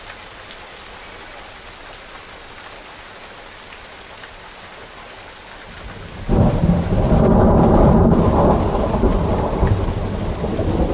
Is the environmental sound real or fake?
real